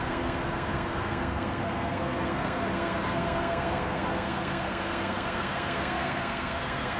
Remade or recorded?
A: remade